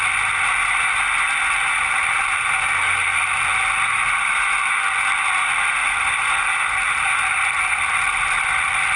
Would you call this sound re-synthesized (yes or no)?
no